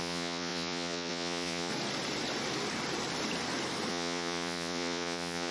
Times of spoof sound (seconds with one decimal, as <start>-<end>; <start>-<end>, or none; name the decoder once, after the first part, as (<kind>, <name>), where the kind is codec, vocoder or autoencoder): 0.0-1.7 (vocoder, Vocos); 3.9-5.5